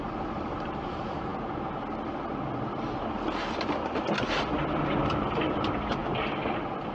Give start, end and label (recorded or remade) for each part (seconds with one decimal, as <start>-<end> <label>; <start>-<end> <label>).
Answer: 0.0-1.3 remade; 1.3-5.4 recorded; 5.4-6.0 remade; 6.0-6.9 recorded